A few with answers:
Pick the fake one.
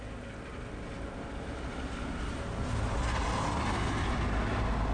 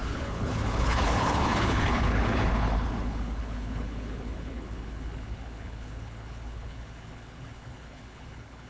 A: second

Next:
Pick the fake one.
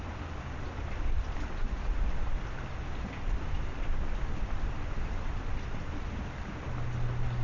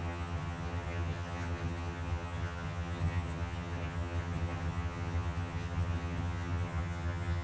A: second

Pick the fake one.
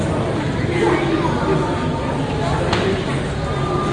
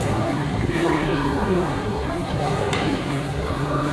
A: second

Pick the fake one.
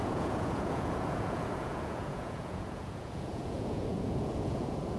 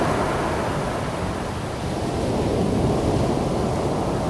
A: first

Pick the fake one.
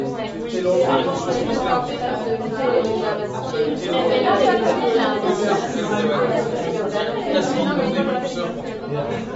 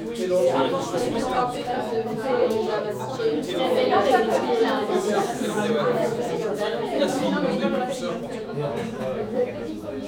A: second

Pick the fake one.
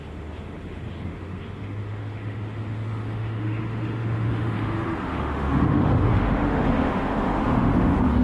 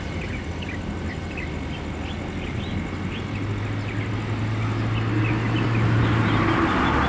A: first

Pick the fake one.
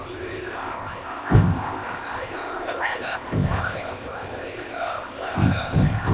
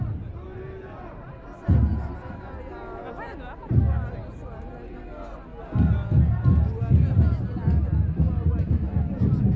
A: first